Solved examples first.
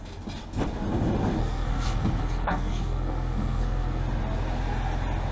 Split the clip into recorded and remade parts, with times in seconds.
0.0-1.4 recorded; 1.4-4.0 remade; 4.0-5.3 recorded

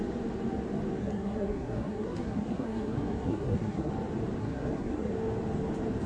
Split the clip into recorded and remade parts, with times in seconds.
0.0-1.0 recorded; 1.0-3.9 remade; 3.9-4.4 recorded; 4.4-5.1 remade; 5.1-6.1 recorded

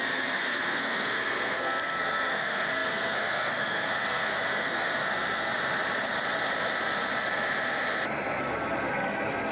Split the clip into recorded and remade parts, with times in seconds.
0.0-5.5 remade; 5.5-8.4 recorded; 8.4-9.5 remade

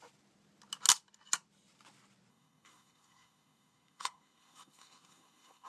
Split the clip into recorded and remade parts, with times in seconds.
0.0-2.3 recorded; 2.3-5.7 remade

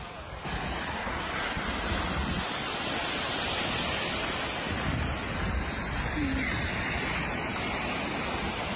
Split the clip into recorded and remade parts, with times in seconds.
0.0-0.9 recorded; 0.9-1.6 remade; 1.6-8.8 recorded